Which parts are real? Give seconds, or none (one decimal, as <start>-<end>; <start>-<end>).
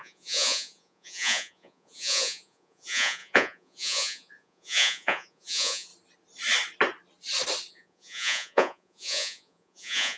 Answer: 5.9-7.7